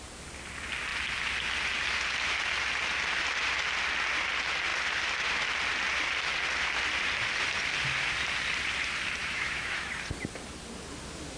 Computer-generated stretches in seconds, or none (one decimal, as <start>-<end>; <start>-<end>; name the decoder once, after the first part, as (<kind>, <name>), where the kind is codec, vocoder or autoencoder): 9.2-9.9 (autoencoder, DAC-VAE)